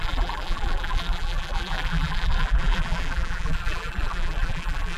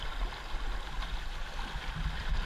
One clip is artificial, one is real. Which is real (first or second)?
second